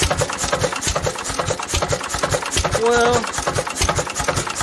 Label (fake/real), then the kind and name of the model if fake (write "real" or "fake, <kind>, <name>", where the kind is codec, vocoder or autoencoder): real